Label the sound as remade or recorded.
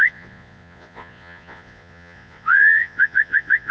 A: remade